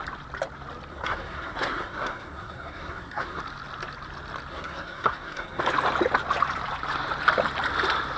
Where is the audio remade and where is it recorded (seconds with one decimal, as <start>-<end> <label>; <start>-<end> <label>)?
0.0-0.9 recorded; 0.9-3.4 remade; 3.4-4.5 recorded; 4.5-5.6 remade; 5.6-8.2 recorded